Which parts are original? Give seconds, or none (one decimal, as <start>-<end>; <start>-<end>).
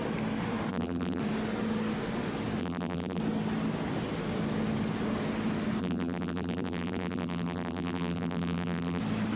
0.0-0.7; 1.2-2.6; 3.2-5.8; 9.0-9.4